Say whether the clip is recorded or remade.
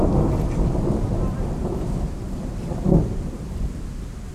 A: recorded